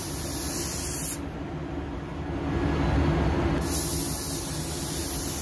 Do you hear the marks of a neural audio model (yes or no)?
no